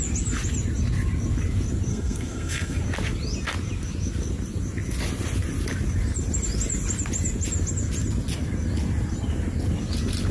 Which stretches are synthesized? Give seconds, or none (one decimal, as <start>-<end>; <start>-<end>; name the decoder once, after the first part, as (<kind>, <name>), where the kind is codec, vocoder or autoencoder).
1.9-2.8 (codec, SNAC)